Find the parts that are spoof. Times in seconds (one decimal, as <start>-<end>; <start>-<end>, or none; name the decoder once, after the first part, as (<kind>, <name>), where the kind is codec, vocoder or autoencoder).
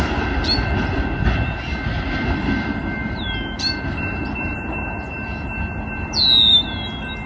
3.0-4.7 (vocoder, BigVGAN v2)